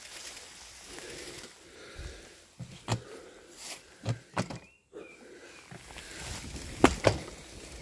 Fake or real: real